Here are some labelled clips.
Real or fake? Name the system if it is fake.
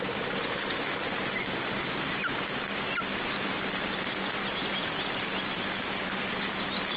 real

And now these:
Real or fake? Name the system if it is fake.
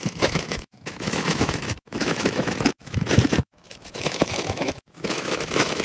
fake, autoencoder, DAC-VAE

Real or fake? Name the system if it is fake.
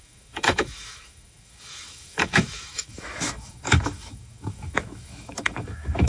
fake, autoencoder, DAC-VAE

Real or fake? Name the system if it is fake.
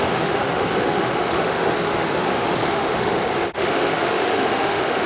fake, autoencoder, DAC-VAE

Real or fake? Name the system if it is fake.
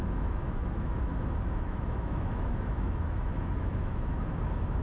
fake, autoencoder, DAC-VAE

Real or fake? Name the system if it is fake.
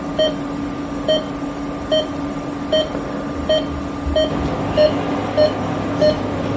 real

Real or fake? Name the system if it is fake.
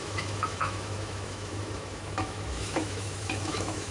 fake, autoencoder, DAC-VAE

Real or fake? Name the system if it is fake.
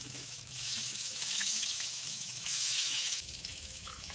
fake, autoencoder, DAC-VAE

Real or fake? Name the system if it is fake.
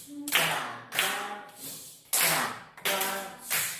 real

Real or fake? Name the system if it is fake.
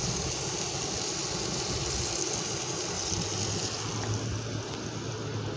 real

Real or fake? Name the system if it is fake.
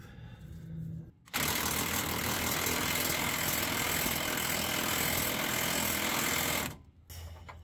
real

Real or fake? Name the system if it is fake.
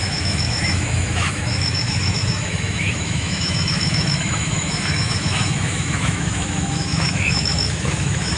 fake, autoencoder, DAC-VAE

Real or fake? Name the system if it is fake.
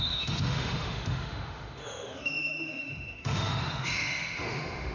fake, autoencoder, DAC-VAE